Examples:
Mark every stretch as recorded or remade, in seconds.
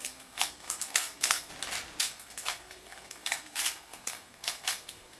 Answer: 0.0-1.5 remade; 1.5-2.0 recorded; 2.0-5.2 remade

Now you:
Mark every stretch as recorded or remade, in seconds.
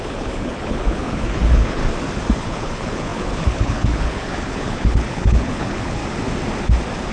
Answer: 0.0-1.8 remade; 1.8-2.4 recorded; 2.4-6.0 remade; 6.0-7.1 recorded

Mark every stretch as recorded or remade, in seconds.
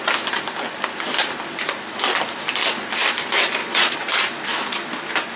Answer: 0.0-3.6 recorded; 3.6-4.1 remade; 4.1-5.4 recorded